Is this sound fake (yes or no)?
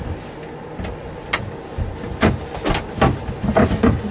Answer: no